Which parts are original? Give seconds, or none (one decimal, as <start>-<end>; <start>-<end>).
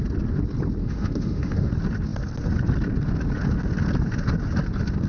0.0-0.8; 1.7-5.1